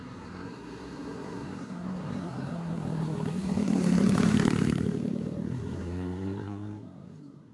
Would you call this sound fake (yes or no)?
yes